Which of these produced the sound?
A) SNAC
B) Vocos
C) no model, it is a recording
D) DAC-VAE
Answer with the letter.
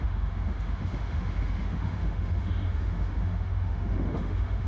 D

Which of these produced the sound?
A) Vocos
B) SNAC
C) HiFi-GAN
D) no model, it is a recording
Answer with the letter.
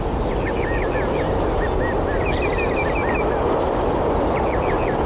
D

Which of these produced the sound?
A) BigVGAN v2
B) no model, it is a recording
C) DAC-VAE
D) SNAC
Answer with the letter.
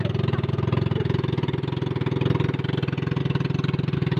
B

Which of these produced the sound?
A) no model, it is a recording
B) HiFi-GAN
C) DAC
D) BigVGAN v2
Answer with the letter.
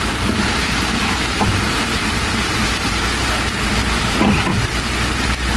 D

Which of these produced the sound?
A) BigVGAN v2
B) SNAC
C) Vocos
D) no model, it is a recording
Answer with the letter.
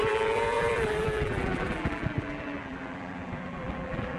A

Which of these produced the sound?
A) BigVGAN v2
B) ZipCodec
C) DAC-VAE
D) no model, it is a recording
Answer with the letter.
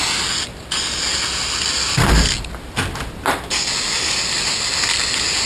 D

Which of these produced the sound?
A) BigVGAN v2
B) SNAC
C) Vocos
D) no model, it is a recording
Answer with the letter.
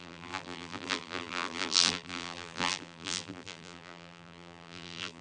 A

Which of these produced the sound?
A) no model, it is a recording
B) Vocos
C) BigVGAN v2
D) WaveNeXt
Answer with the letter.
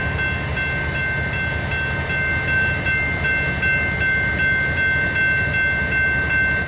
A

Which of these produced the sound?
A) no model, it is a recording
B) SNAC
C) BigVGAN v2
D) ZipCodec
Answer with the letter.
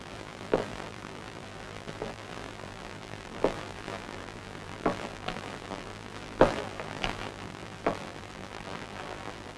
C